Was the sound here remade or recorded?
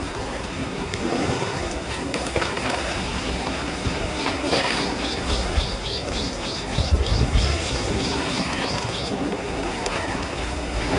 remade